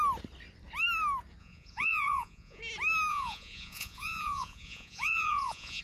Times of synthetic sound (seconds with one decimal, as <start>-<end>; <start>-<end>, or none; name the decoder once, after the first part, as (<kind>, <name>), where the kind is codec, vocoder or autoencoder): 1.4-2.6 (vocoder, Vocos); 3.1-5.8